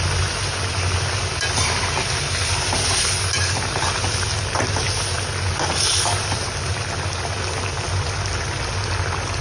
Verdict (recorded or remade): recorded